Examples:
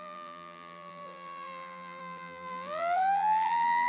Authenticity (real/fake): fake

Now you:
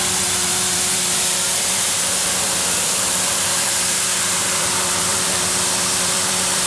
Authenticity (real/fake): fake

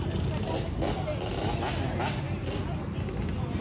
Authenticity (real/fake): real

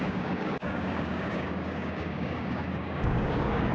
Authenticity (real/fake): fake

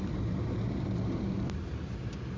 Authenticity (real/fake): real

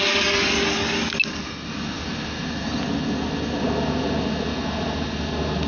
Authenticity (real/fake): real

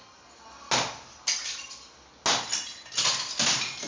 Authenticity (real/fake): real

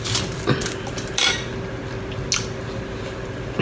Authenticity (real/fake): real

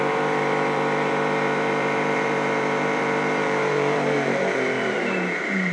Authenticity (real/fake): fake